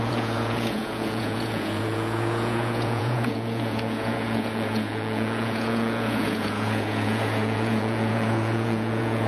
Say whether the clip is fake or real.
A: fake